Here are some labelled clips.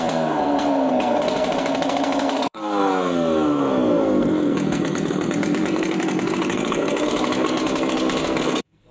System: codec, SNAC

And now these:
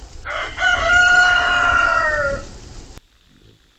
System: none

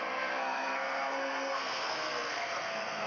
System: codec, SNAC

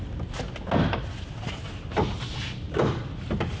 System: none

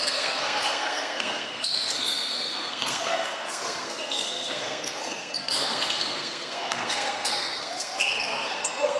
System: codec, SNAC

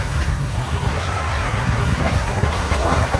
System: codec, SNAC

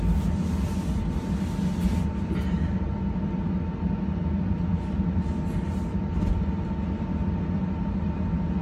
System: none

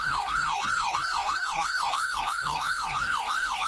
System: codec, SNAC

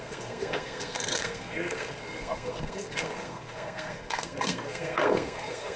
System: codec, SNAC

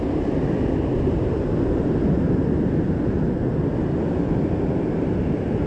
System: none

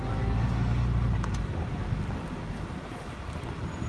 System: none